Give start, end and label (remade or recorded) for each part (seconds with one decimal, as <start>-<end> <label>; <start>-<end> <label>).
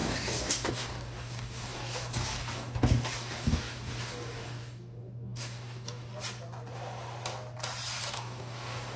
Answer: 0.0-6.1 remade; 6.1-8.1 recorded; 8.1-9.0 remade